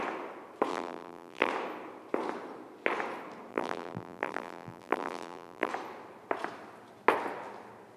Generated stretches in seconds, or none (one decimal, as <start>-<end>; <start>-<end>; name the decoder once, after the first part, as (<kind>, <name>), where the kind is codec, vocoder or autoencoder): 0.7-1.5 (vocoder, BigVGAN v2); 3.5-5.7